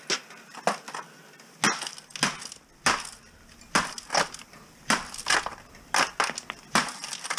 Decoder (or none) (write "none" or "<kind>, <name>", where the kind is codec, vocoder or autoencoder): none